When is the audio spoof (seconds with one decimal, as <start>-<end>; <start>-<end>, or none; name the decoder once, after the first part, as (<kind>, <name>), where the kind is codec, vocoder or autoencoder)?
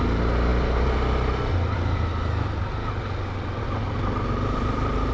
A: none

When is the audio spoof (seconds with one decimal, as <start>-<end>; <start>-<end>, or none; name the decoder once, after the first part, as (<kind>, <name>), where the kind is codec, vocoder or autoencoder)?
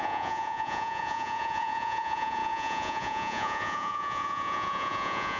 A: 0.0-5.4 (vocoder, Vocos)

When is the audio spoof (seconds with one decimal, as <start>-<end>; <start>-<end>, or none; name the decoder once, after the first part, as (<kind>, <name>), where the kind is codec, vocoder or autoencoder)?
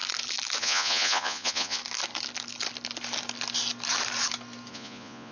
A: 0.6-1.8 (vocoder, Vocos); 4.7-5.3